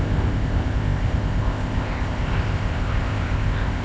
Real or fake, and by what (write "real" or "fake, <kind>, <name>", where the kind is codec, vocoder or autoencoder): fake, codec, ZipCodec